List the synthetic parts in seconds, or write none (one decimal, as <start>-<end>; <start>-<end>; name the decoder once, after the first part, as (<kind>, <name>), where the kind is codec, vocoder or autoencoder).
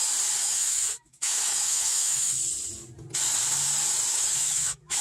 0.4-2.4 (autoencoder, DAC-VAE); 4.1-5.0